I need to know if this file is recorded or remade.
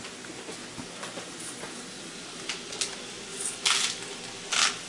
recorded